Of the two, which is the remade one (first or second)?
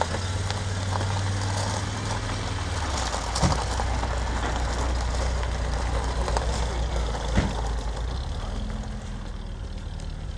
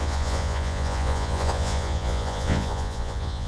second